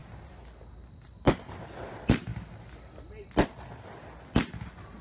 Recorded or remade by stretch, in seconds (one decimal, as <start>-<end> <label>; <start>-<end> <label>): 0.0-5.0 recorded